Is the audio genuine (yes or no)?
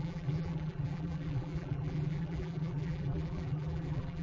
no